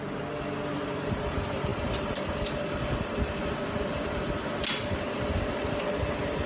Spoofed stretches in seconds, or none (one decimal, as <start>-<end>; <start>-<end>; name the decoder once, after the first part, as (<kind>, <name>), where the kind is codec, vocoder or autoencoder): none

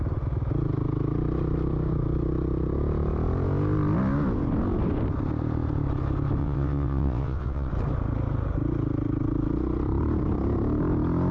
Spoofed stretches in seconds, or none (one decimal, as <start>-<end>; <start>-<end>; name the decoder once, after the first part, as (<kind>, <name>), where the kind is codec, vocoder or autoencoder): 6.4-7.7 (vocoder, WaveNeXt)

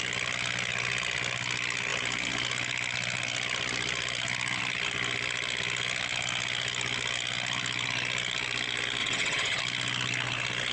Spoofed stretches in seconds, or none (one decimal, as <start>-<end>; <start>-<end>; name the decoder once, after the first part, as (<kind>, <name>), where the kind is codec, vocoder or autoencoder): 9.0-9.6 (vocoder, WaveNeXt)